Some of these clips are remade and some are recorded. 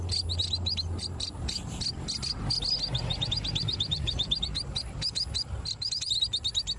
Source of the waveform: recorded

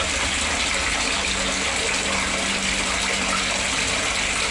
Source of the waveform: recorded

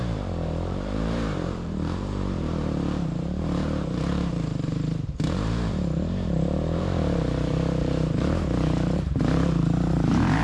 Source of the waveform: remade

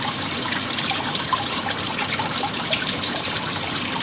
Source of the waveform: remade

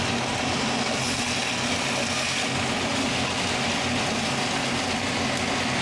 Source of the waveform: recorded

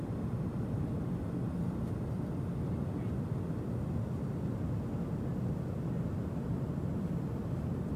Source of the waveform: recorded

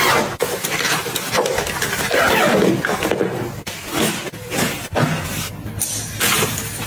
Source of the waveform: remade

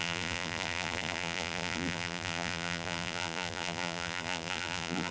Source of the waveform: remade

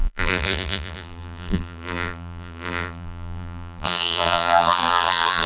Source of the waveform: remade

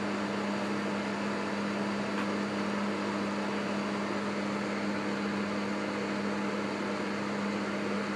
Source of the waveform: recorded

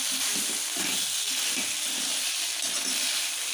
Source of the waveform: recorded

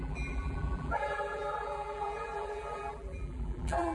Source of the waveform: remade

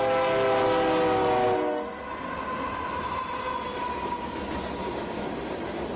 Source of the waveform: recorded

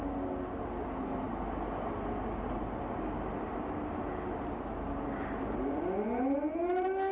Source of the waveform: recorded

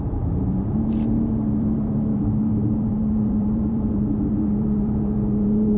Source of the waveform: remade